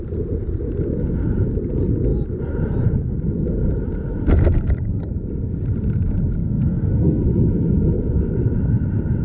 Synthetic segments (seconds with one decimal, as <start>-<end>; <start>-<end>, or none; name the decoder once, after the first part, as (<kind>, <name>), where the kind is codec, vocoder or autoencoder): 6.4-7.2 (codec, SNAC)